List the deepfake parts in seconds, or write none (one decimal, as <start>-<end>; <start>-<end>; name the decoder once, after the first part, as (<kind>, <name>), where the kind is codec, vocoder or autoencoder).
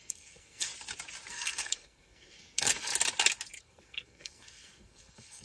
0.0-0.7 (codec, SNAC); 1.3-2.9; 3.6-5.4